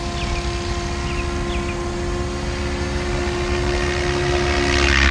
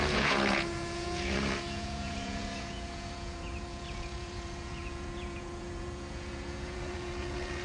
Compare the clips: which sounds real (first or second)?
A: first